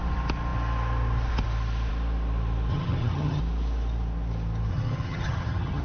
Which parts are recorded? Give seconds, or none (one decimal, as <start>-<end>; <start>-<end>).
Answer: 0.0-2.7; 3.4-4.7

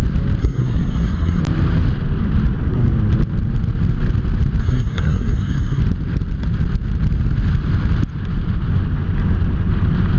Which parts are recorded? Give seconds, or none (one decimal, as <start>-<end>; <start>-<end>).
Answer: 0.0-0.4; 1.4-4.6; 5.8-10.2

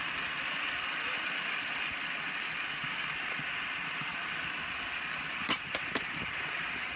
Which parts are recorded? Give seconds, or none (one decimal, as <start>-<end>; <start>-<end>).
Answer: 0.0-5.4; 6.2-7.0